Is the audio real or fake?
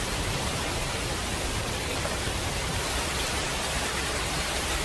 fake